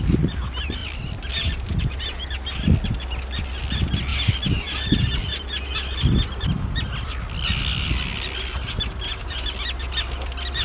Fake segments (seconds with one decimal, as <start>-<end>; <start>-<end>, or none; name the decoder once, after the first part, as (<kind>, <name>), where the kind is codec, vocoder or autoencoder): none